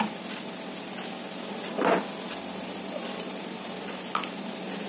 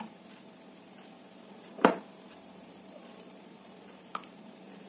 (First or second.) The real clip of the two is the first